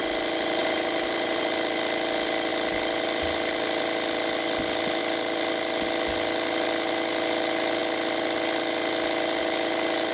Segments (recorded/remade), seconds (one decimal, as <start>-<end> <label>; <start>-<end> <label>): 0.0-0.6 recorded; 0.6-1.4 remade; 1.4-10.1 recorded